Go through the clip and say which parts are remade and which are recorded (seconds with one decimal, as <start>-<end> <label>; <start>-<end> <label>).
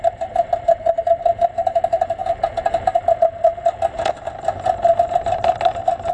0.0-2.2 remade; 2.2-6.1 recorded